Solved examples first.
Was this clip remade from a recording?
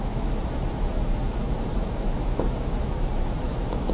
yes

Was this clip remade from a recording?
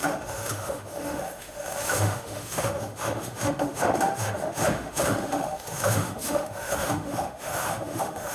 yes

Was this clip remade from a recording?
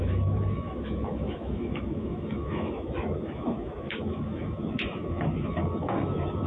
yes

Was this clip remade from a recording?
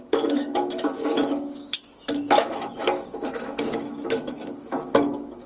yes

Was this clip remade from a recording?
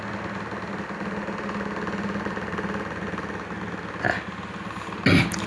no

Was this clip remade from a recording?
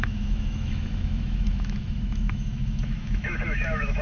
yes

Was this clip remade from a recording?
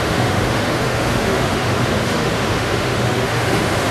yes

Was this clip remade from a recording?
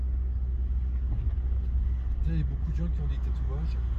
no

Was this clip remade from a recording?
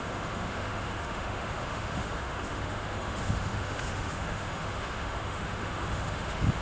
yes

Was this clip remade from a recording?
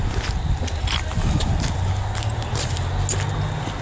no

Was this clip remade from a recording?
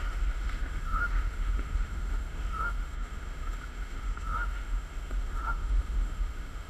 yes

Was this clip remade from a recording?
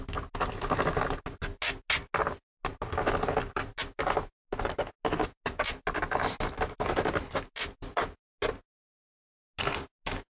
no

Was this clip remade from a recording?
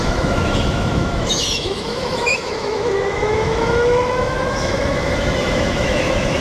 yes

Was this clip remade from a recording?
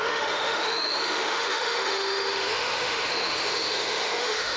yes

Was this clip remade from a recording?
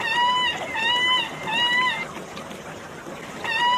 no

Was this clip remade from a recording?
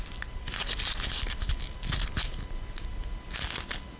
no